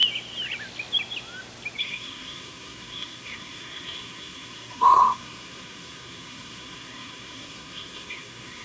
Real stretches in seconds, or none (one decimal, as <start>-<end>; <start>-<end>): 0.0-1.8